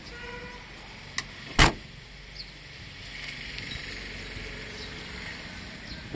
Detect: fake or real real